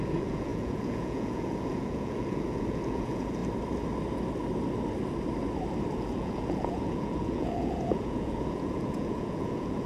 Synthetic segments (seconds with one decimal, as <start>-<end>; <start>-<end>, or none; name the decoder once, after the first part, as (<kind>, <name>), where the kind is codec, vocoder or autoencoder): 0.0-3.4 (vocoder, Vocos); 5.9-9.9